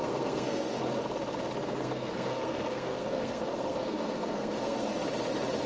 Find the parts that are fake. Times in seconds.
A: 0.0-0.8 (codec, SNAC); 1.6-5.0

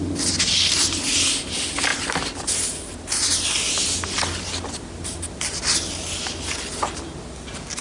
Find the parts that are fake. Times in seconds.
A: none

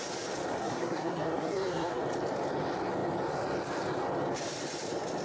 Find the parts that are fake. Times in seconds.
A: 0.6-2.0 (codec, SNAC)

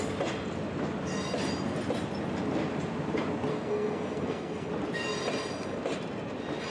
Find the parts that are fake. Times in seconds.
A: 3.5-4.7 (codec, SNAC)